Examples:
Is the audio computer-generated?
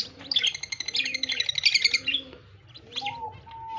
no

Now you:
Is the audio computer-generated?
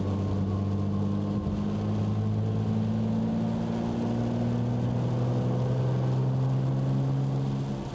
no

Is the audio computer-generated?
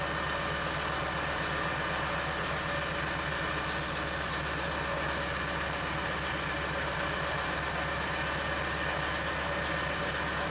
no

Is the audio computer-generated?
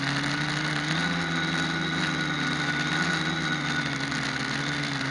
no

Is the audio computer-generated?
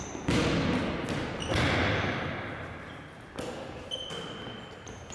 no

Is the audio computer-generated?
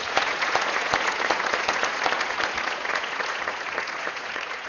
yes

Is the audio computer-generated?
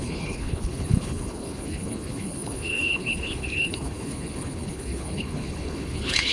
yes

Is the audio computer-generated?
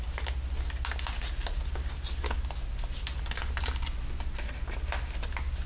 no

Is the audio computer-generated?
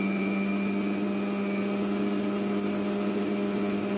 no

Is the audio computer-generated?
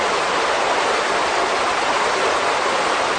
no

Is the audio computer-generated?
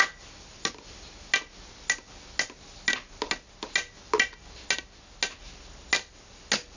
no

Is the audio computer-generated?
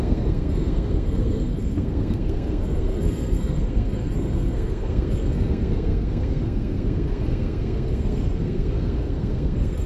yes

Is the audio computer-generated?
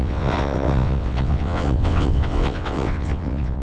yes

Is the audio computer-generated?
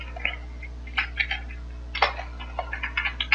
no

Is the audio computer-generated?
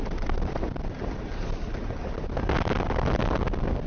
no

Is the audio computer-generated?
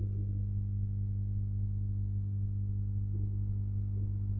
no